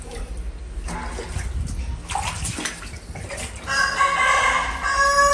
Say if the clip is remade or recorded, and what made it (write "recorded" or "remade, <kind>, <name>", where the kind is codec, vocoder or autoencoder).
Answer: recorded